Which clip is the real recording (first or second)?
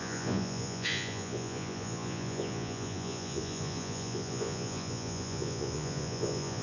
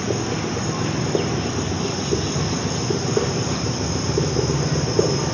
second